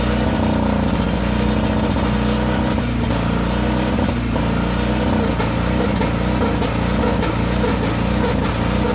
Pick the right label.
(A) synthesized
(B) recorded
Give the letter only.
B